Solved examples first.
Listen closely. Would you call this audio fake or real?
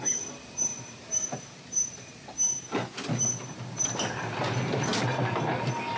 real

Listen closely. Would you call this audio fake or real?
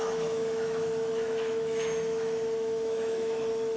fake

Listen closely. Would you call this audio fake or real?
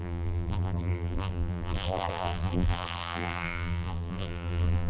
fake